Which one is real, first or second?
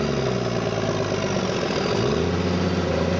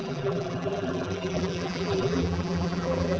first